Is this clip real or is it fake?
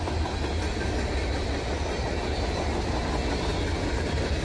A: real